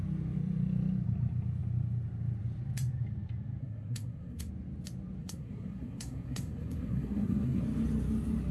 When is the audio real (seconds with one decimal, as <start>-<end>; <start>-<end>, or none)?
0.0-3.6; 4.5-5.2; 7.6-8.5